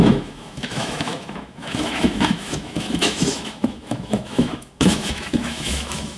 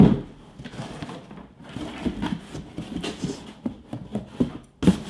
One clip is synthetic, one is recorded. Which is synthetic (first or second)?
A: first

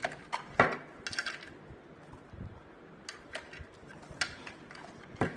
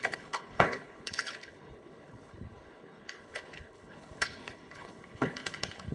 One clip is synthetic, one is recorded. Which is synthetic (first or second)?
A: second